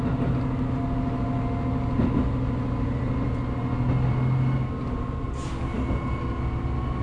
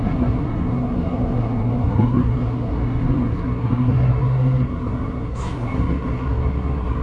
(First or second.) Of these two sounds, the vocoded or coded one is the second